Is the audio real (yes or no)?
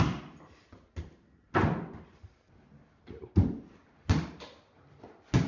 yes